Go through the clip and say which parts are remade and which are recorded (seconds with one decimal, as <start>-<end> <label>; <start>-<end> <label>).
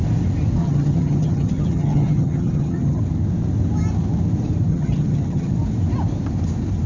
0.0-0.6 recorded; 0.6-3.0 remade; 3.0-4.7 recorded; 4.7-5.5 remade; 5.5-6.9 recorded